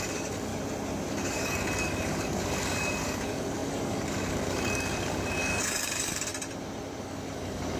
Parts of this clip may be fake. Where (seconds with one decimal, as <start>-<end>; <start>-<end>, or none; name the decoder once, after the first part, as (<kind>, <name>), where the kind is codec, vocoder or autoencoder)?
0.0-0.5 (codec, DAC); 1.1-6.3; 7.0-7.8